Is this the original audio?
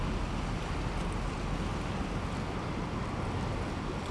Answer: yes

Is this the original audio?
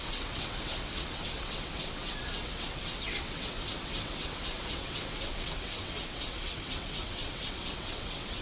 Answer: no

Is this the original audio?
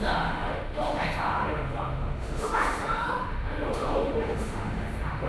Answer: no